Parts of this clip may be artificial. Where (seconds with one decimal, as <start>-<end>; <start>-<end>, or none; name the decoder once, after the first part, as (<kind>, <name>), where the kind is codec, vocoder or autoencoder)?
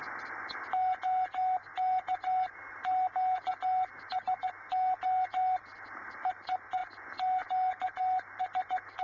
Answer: none